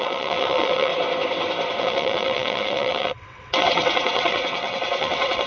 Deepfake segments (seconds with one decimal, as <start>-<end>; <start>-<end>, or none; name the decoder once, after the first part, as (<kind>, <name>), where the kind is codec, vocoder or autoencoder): 0.0-0.9 (vocoder, WaveNeXt); 1.8-5.5